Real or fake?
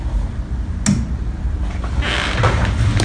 real